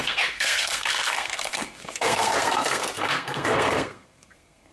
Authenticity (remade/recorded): remade